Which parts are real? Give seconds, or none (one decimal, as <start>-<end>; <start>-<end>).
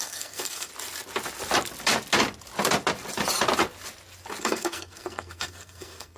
0.7-4.4